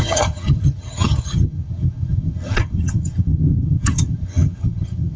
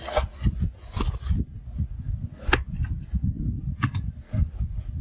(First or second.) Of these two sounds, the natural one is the second